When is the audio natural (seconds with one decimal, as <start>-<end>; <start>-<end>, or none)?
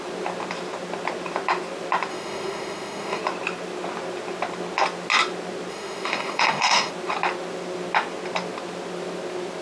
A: 0.0-2.1; 3.2-5.7; 6.9-9.6